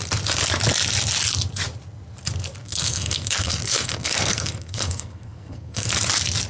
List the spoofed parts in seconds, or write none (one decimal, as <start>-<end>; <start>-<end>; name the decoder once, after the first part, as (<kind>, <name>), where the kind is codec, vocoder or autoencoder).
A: 2.6-5.9 (codec, SNAC)